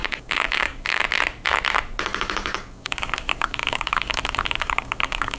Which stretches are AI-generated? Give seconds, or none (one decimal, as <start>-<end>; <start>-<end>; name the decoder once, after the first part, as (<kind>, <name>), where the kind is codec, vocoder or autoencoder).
0.0-1.0 (codec, DAC); 2.0-5.4